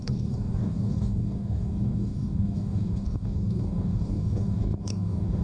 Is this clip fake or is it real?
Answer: fake